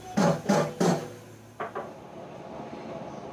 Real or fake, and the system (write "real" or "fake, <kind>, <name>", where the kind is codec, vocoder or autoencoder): real